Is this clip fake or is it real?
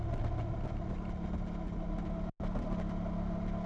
real